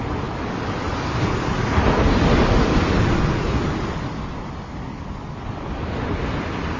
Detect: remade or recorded recorded